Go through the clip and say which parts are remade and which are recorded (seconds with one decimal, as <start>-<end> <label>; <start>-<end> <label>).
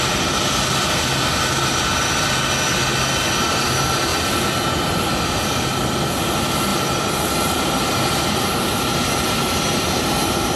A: 0.0-10.6 recorded